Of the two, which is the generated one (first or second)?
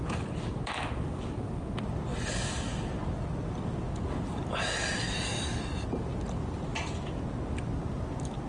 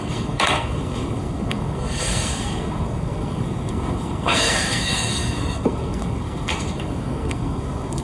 second